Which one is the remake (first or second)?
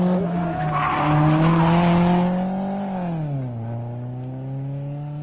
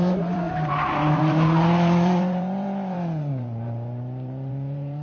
second